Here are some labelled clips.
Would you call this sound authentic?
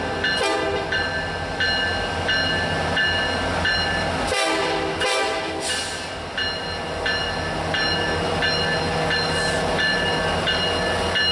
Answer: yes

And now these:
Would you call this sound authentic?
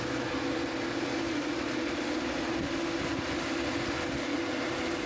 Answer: yes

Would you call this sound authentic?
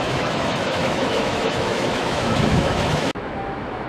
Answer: no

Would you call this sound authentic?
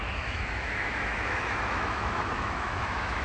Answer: no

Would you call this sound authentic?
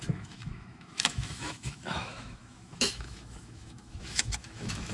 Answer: no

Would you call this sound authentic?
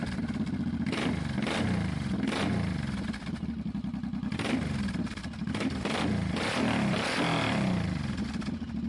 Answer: yes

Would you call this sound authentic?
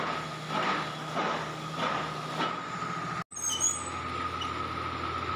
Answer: yes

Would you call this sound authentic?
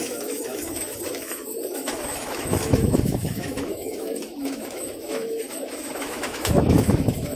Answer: no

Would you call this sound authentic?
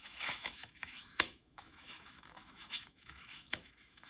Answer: no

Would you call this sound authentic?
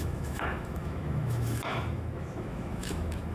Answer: no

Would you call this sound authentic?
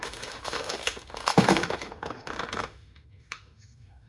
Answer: no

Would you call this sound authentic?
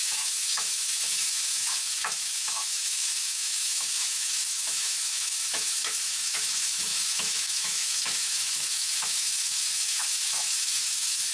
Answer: no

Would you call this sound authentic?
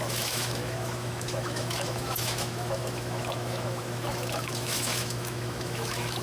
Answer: no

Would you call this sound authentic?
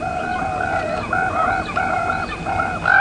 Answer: yes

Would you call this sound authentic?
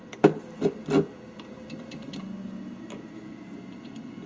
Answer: yes